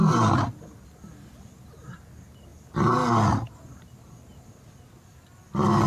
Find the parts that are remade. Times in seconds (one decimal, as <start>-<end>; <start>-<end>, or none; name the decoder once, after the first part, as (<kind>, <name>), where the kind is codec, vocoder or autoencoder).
none